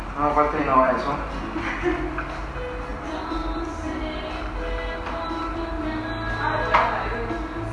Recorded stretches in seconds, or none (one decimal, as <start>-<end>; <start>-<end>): 0.0-0.7; 1.3-2.9; 4.3-7.7